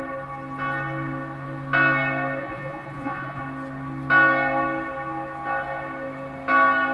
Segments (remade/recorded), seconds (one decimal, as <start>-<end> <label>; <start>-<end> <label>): 0.0-2.4 recorded; 2.4-3.4 remade; 3.4-6.9 recorded